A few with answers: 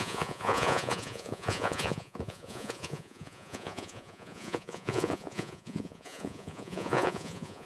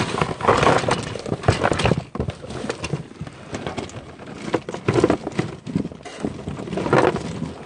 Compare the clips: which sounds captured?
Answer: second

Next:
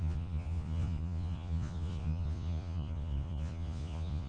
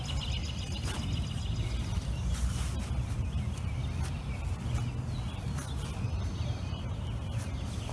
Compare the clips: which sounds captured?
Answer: second